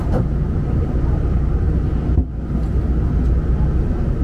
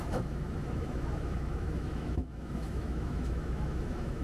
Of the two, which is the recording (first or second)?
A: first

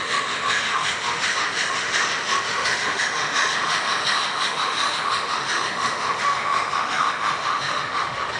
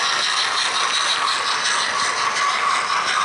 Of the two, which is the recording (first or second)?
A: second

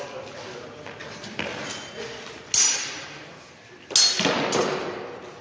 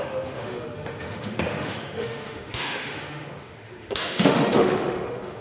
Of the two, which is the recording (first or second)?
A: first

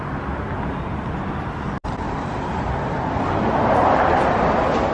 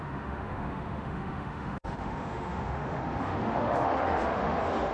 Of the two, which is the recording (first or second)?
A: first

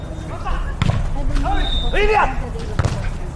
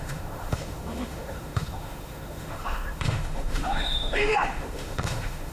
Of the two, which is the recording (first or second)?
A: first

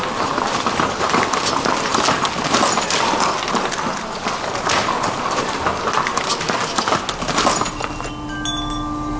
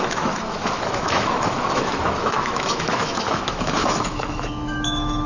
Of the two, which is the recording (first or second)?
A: first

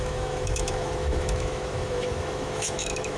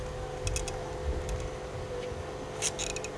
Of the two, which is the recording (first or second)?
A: second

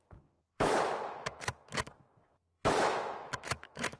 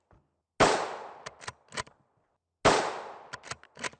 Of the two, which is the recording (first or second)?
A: second